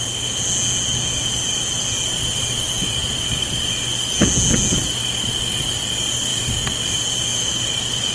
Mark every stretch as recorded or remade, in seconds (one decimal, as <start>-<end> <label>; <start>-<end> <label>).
0.0-8.1 recorded